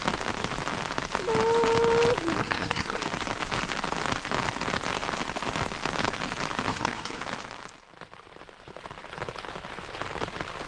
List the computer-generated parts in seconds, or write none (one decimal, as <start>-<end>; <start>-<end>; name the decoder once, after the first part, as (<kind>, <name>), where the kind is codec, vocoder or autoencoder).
2.4-3.0 (codec, SNAC); 6.7-7.2